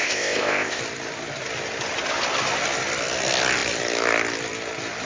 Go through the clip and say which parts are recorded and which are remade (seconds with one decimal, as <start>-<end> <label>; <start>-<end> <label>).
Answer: 0.0-0.8 remade; 0.8-5.1 recorded